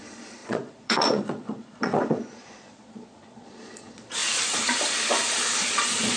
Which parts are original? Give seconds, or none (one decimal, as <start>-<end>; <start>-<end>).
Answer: 4.2-5.7